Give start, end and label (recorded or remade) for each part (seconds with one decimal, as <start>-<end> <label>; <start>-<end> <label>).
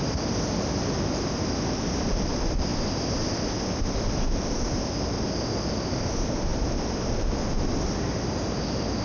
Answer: 0.0-9.0 recorded